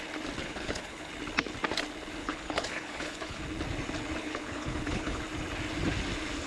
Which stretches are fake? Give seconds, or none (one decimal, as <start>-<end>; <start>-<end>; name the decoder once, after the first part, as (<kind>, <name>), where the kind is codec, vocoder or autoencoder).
0.4-1.1 (codec, HILCodec); 2.2-3.4; 4.2-5.2

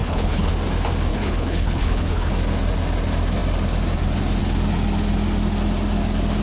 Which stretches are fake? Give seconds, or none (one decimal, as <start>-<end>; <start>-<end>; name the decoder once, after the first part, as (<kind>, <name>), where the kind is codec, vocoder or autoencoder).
0.0-0.5 (codec, HILCodec); 1.1-2.3

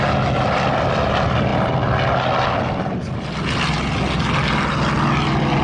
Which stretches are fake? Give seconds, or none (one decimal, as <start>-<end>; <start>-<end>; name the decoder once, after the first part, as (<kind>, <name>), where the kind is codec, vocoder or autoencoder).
none

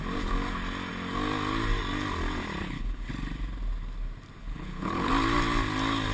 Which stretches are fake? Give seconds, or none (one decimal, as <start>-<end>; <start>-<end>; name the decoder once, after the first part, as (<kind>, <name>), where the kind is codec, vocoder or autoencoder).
2.6-3.1 (codec, HILCodec); 4.4-5.1

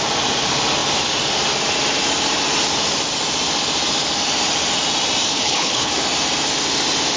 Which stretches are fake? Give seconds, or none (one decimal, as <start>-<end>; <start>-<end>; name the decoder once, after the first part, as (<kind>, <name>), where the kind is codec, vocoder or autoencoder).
5.3-5.9 (codec, HILCodec)